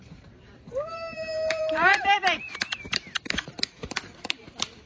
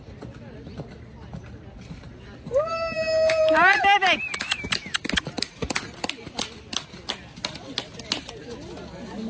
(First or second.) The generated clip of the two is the first